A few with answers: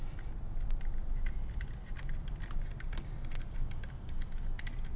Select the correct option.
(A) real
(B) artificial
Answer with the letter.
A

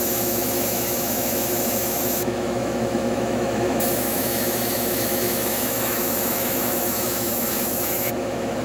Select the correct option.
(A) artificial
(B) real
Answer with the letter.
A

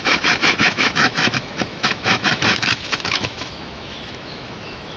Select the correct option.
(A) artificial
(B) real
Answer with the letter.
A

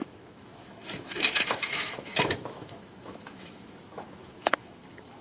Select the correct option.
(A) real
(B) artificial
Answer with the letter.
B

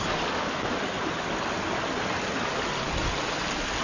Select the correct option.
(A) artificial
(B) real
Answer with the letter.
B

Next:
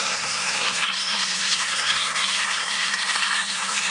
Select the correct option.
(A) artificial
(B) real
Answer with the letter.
A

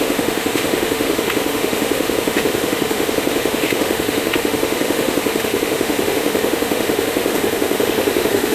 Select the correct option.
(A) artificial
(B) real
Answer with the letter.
A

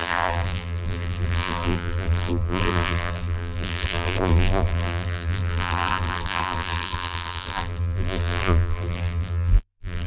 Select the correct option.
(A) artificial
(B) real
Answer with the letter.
A